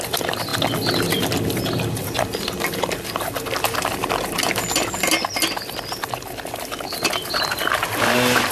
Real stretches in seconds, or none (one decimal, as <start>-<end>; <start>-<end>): 0.0-8.5